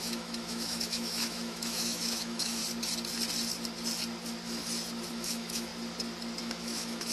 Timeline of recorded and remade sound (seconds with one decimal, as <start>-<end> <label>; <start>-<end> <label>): 0.0-2.6 remade; 2.6-5.1 recorded; 5.1-5.7 remade; 5.7-6.4 recorded; 6.4-7.1 remade